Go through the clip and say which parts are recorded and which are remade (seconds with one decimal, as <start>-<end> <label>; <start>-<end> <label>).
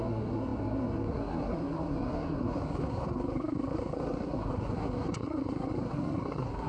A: 0.0-6.7 remade